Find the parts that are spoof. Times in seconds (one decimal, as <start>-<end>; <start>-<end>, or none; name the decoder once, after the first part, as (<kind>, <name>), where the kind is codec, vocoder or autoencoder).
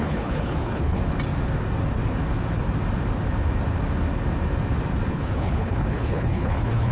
0.0-1.0 (codec, HILCodec); 5.1-6.9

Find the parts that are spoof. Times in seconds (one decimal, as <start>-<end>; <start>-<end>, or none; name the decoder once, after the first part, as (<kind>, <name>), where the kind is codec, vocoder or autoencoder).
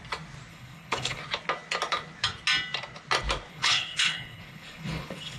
0.5-1.2 (codec, HILCodec); 3.5-5.4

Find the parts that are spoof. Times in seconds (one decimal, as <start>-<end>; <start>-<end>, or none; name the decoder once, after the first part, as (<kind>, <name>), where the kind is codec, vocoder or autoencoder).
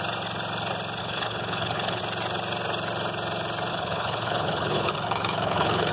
1.0-2.0 (codec, HILCodec); 3.7-5.9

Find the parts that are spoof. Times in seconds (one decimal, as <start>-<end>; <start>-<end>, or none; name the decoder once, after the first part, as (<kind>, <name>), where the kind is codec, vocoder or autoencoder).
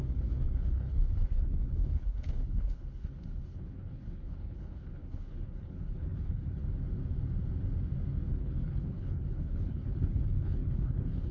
0.0-6.6 (codec, HILCodec); 8.3-11.3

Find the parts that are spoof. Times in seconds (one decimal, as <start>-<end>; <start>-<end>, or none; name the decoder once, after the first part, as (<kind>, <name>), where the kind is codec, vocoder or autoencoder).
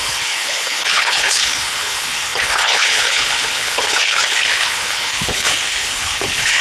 0.0-6.6 (codec, HILCodec)